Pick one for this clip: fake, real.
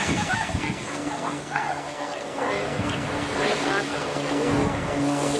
fake